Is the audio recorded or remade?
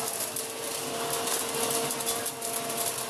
recorded